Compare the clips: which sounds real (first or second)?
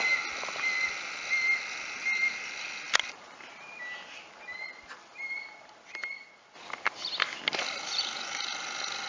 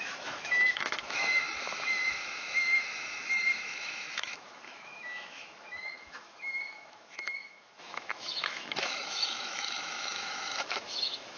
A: first